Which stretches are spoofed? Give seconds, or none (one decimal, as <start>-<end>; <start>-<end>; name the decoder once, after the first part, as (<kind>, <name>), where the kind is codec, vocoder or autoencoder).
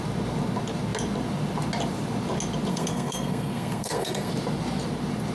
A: 2.7-4.3 (codec, SNAC)